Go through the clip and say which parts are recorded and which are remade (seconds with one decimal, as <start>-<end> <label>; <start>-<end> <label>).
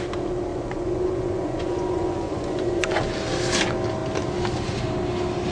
0.0-0.5 recorded; 0.5-3.0 remade; 3.0-5.5 recorded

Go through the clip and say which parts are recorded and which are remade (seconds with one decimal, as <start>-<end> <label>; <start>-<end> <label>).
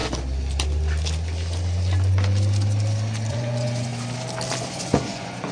0.0-3.3 recorded; 3.3-3.9 remade; 3.9-4.6 recorded; 4.6-5.5 remade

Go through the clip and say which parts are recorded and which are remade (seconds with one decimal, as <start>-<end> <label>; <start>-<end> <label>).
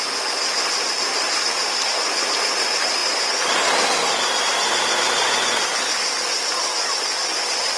0.0-1.1 remade; 1.1-2.6 recorded; 2.6-3.0 remade; 3.0-4.4 recorded; 4.4-6.7 remade; 6.7-7.8 recorded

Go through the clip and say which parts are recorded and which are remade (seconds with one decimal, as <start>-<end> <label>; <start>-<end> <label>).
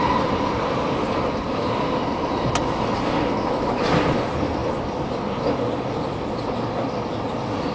0.0-7.7 recorded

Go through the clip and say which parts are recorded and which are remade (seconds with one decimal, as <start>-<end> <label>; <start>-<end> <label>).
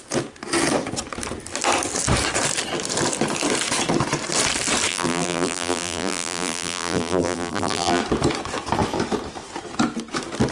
0.0-4.9 recorded; 4.9-8.0 remade; 8.0-10.5 recorded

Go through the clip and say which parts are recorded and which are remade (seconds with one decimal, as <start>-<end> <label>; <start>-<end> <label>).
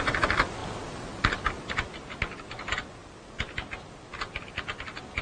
0.0-0.6 recorded; 0.6-1.9 remade; 1.9-5.2 recorded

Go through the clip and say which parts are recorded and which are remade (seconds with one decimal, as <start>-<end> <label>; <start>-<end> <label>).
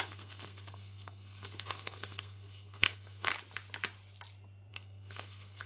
0.0-3.3 remade; 3.3-4.7 recorded; 4.7-5.7 remade